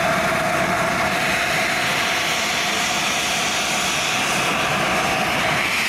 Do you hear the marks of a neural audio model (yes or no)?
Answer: no